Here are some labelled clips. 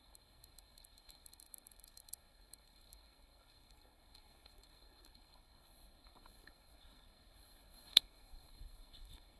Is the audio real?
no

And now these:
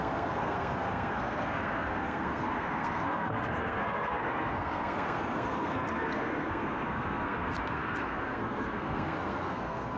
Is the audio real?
no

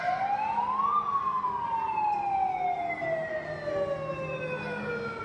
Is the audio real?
yes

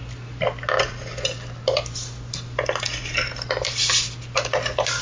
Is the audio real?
yes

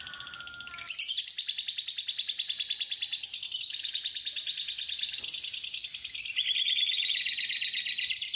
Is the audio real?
yes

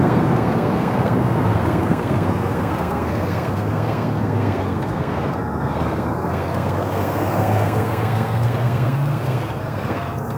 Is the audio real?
no